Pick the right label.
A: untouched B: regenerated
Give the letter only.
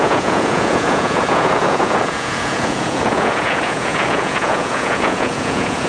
B